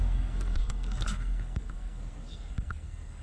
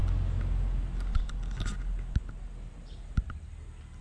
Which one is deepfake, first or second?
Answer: first